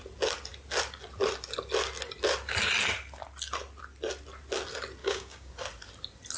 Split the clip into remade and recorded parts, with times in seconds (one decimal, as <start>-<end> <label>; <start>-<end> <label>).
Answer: 0.0-5.0 recorded; 5.0-5.5 remade; 5.5-6.4 recorded

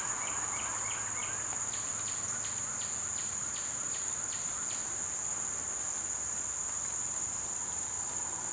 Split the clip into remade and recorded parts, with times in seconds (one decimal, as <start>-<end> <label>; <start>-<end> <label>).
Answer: 0.0-8.5 recorded

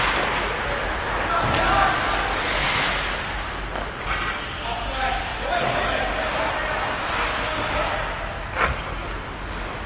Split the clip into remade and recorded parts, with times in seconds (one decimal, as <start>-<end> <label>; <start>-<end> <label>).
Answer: 0.0-9.9 recorded